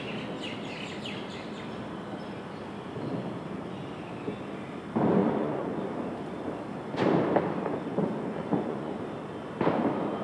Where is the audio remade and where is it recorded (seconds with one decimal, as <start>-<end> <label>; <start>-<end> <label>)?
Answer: 0.0-5.2 recorded; 5.2-5.8 remade; 5.8-7.9 recorded; 7.9-8.9 remade; 8.9-10.2 recorded

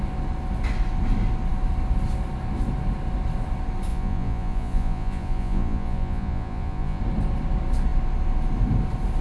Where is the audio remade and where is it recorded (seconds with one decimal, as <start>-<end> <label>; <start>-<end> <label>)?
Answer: 0.0-3.9 recorded; 3.9-7.0 remade; 7.0-9.2 recorded

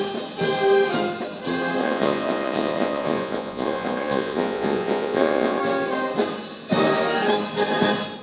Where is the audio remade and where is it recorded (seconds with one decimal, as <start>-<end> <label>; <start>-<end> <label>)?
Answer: 0.0-1.8 recorded; 1.8-5.6 remade; 5.6-8.2 recorded

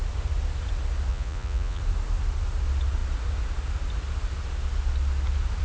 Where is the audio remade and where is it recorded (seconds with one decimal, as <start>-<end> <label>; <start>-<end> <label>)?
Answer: 0.0-1.1 recorded; 1.1-1.8 remade; 1.8-5.6 recorded

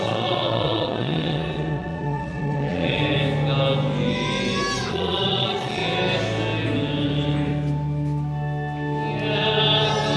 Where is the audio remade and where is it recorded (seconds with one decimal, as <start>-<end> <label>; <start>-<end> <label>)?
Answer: 0.0-3.0 remade; 3.0-4.9 recorded; 4.9-5.8 remade; 5.8-10.2 recorded

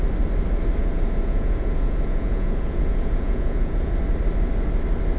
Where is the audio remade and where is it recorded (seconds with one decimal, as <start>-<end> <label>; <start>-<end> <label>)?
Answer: 0.0-0.8 recorded; 0.8-3.9 remade; 3.9-5.2 recorded